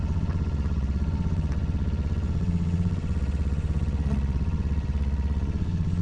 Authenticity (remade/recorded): remade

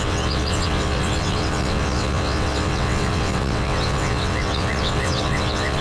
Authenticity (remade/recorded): remade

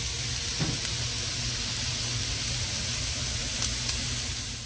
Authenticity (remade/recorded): recorded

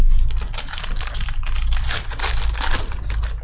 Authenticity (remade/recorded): recorded